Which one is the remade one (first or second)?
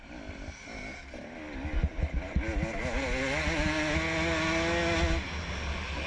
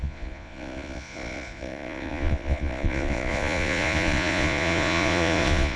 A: second